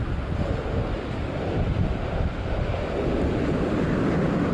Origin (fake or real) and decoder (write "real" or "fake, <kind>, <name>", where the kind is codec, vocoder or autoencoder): real